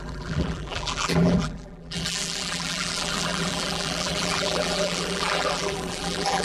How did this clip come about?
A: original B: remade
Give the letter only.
B